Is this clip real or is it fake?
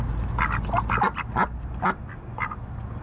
real